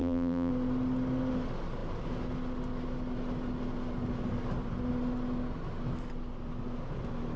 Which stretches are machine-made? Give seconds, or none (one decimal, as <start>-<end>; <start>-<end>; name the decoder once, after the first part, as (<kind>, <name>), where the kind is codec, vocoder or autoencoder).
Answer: 0.0-0.5 (vocoder, BigVGAN v2)